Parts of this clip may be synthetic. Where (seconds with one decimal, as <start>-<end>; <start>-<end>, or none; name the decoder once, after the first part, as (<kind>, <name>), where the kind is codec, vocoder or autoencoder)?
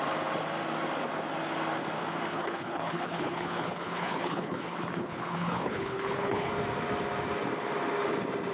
2.3-6.5 (codec, HILCodec)